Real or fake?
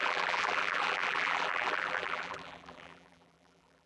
fake